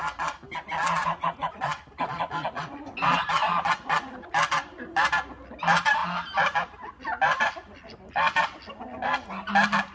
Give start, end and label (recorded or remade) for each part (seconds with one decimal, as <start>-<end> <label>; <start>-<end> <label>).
0.0-1.0 recorded; 1.0-1.6 remade; 1.6-9.9 recorded

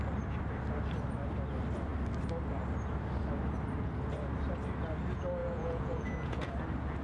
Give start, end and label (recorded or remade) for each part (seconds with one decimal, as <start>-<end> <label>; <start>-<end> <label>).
0.0-5.4 recorded; 5.4-6.5 remade; 6.5-7.0 recorded

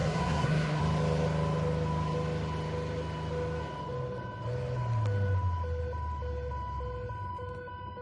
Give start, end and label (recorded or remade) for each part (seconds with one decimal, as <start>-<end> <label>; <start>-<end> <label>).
0.0-0.8 remade; 0.8-8.0 recorded